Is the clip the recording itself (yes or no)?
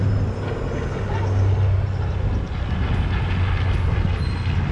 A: yes